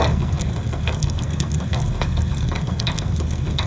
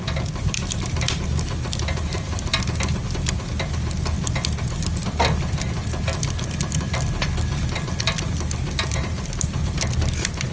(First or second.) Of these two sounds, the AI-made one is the first